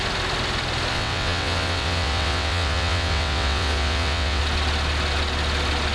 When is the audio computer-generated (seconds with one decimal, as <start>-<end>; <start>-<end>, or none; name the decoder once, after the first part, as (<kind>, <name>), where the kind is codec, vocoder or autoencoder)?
0.9-4.4 (vocoder, WaveNeXt)

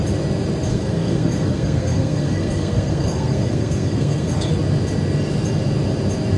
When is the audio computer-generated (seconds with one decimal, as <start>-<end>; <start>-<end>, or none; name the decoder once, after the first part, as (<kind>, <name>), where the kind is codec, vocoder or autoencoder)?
0.7-4.5 (codec, SNAC)